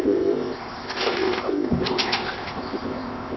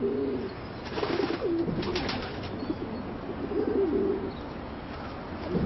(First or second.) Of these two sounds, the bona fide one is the second